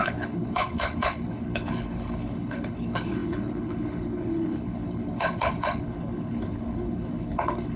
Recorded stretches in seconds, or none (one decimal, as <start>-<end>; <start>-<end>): none